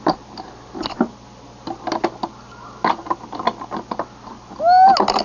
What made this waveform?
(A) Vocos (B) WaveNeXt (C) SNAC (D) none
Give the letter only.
D